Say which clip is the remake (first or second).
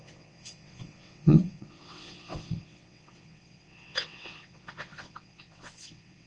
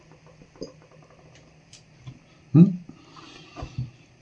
first